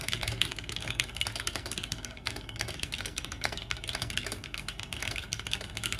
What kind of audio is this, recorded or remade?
remade